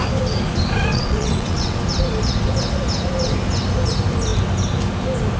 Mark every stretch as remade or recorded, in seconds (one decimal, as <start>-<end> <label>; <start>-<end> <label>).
0.0-0.9 recorded; 0.9-1.8 remade; 1.8-5.4 recorded